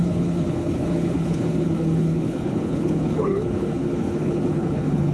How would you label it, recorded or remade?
remade